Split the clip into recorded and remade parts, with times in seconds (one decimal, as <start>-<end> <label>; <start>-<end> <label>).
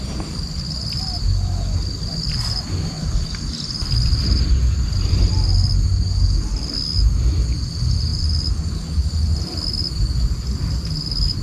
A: 0.0-11.4 recorded